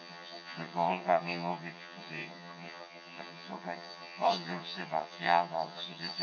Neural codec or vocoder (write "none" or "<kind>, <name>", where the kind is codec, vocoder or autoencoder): vocoder, HiFi-GAN